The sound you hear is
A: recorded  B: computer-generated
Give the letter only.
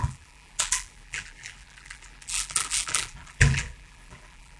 B